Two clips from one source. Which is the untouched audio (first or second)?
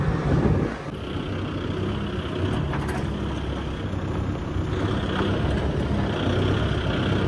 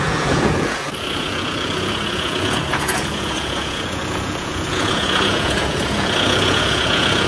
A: first